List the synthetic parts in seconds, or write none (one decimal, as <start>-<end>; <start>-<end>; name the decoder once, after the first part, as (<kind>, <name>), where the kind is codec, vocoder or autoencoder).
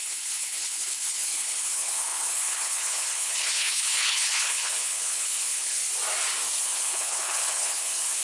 0.0-5.8 (codec, HILCodec); 6.6-8.2